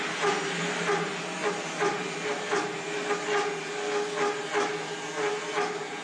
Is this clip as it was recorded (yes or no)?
yes